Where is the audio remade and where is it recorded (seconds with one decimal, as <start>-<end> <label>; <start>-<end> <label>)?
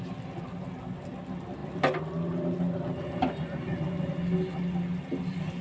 0.0-5.6 recorded